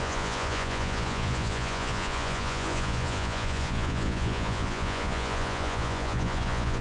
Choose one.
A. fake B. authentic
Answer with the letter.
A